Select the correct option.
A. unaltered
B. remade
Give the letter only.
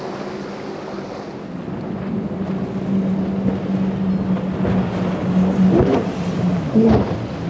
A